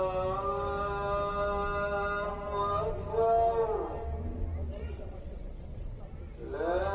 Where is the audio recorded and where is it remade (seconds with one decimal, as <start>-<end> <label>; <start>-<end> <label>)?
0.0-4.7 recorded; 4.7-6.0 remade; 6.0-6.9 recorded